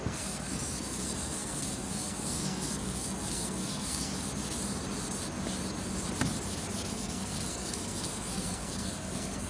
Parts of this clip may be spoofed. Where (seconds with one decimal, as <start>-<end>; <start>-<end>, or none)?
0.0-4.1; 6.9-9.5